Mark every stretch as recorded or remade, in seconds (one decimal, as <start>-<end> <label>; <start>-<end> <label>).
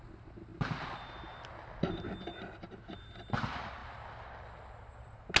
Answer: 0.0-5.4 recorded